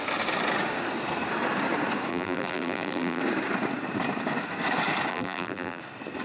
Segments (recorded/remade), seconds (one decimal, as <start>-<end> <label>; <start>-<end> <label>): 0.0-2.1 recorded; 2.1-3.2 remade; 3.2-5.1 recorded; 5.1-5.8 remade; 5.8-6.2 recorded